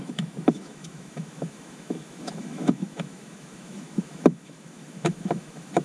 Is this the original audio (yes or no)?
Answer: no